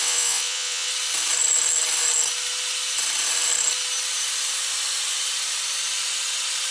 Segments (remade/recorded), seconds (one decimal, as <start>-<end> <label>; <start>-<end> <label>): 0.0-0.9 remade; 0.9-6.7 recorded